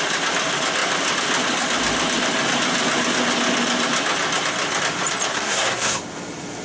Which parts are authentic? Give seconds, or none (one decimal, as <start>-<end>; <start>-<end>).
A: 0.0-5.3; 6.0-6.6

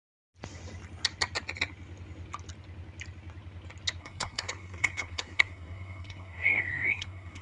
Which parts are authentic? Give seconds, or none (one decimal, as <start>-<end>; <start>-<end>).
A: 0.0-4.0

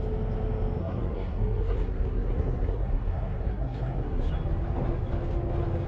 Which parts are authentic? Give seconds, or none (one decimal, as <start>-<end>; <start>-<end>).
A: 0.0-0.8; 4.3-5.9

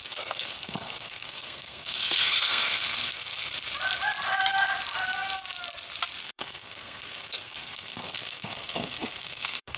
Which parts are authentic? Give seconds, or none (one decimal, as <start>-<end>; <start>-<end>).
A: 3.5-6.2

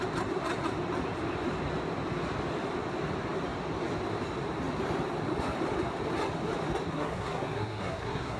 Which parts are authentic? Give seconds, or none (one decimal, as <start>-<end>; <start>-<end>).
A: 0.0-6.9

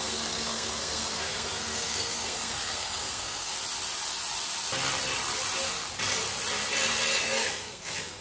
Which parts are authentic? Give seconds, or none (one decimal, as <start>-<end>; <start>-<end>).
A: 3.5-7.2

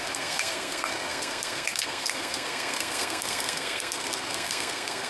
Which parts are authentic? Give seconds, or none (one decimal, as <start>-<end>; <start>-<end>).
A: none

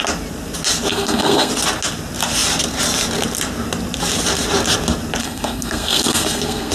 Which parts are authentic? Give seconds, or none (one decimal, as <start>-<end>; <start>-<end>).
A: 0.0-0.9; 1.5-5.2